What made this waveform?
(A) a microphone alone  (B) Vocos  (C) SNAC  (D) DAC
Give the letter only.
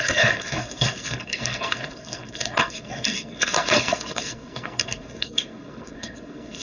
C